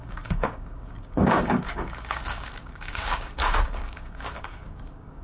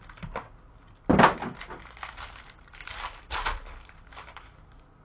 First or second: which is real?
second